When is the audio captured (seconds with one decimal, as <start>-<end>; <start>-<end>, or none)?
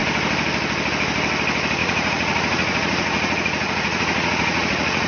0.0-1.8